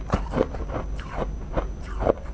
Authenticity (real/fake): real